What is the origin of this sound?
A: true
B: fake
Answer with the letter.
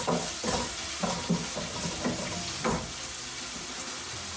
A